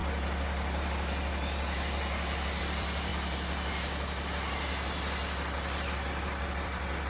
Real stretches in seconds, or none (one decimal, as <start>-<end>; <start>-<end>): 0.0-2.6; 3.1-6.5